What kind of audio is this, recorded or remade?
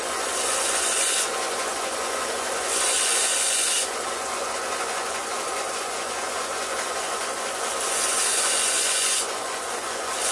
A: remade